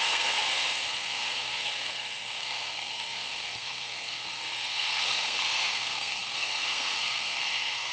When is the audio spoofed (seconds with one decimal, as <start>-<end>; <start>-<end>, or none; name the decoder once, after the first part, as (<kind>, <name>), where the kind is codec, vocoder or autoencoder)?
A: 0.0-7.9 (codec, SNAC)